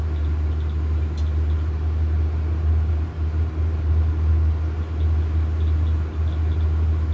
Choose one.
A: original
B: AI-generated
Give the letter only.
A